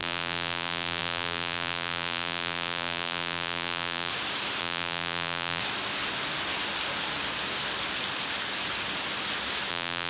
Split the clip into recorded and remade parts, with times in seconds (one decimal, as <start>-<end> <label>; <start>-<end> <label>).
0.0-4.1 remade; 4.1-4.6 recorded; 4.6-5.6 remade; 5.6-9.7 recorded; 9.7-10.1 remade